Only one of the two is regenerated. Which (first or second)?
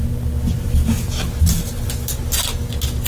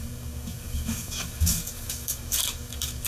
second